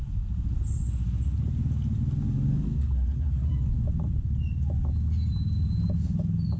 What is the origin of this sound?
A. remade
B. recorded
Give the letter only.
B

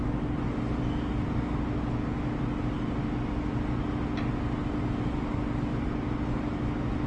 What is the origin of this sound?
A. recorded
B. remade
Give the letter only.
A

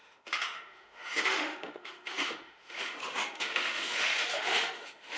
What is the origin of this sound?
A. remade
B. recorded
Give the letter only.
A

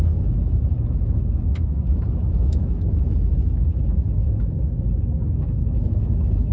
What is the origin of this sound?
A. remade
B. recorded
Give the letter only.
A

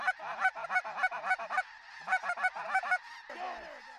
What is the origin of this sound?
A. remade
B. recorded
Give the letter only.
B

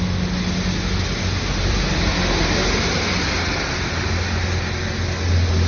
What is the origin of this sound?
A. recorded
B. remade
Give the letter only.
A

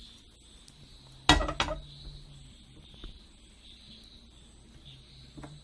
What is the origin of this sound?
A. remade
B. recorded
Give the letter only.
B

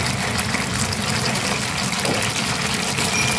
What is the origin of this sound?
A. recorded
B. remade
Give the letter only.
A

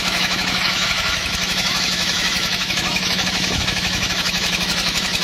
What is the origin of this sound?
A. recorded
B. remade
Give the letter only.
B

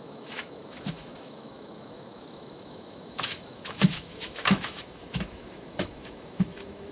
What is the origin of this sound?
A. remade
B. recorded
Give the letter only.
A